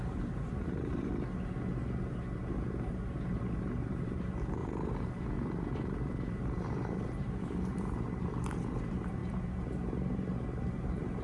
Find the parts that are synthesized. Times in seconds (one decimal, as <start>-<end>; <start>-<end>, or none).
0.0-1.7; 2.5-9.2; 10.7-11.2